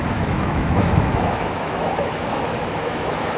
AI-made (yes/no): yes